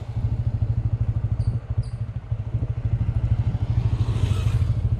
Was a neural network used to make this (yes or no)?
no